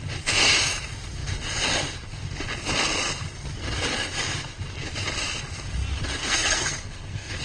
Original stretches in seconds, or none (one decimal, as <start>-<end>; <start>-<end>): 0.0-6.2